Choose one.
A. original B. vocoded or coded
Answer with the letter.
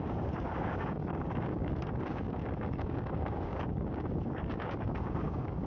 B